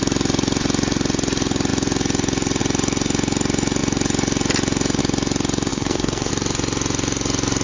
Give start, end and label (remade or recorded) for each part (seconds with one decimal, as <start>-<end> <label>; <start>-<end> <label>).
0.0-5.7 recorded; 5.7-6.3 remade; 6.3-7.6 recorded